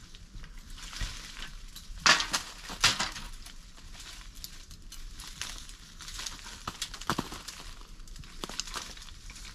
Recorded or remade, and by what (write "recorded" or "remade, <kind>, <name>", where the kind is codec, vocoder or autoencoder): recorded